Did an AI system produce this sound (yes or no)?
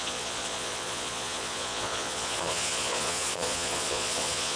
yes